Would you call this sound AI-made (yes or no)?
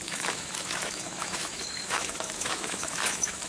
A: yes